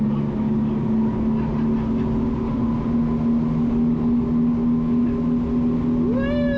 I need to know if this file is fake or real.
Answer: real